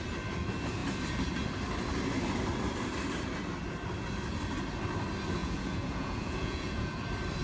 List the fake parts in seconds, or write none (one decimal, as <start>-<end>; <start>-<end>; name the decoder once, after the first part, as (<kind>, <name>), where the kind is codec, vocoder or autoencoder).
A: 5.4-7.0 (vocoder, Vocos)